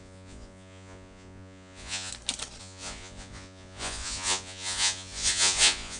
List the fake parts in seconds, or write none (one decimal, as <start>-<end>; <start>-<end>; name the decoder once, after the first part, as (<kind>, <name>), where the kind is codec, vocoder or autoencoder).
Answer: 0.0-2.1 (vocoder, Vocos); 2.6-6.0